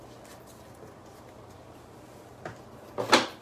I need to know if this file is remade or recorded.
recorded